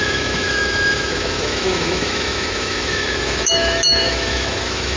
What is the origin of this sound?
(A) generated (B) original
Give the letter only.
A